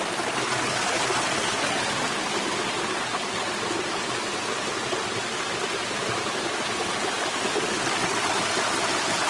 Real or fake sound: real